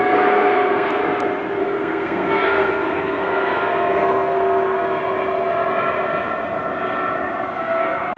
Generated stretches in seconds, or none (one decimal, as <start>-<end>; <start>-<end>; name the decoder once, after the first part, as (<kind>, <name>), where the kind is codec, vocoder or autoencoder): 0.0-1.0 (codec, SNAC); 1.6-5.0; 7.4-8.2